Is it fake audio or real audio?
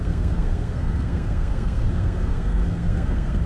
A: fake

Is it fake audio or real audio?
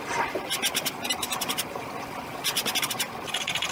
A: real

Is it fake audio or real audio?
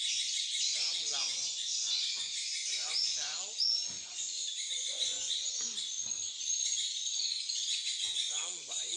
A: fake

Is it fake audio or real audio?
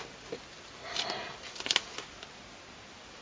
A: real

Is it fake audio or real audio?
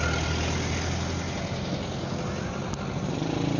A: real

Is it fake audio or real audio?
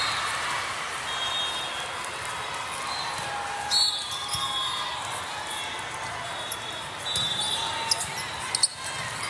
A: real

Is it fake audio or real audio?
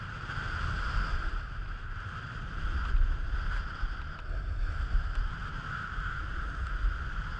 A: real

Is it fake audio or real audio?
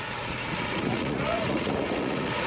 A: fake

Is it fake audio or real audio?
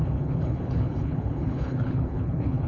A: fake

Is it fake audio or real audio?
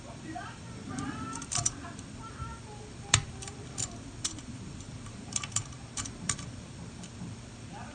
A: fake